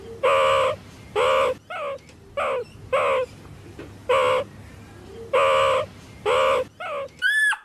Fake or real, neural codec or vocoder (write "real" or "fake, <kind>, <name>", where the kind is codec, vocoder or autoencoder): real